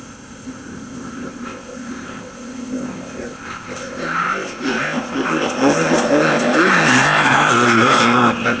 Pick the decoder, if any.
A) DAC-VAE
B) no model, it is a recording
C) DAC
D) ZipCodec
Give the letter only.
D